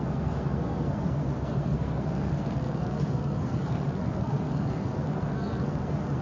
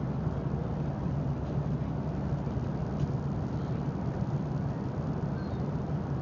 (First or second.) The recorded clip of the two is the second